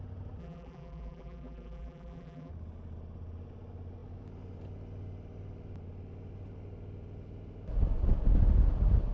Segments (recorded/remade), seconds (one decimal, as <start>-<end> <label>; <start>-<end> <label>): 0.0-0.4 recorded; 0.4-2.5 remade; 2.5-9.1 recorded